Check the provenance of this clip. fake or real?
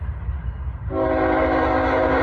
real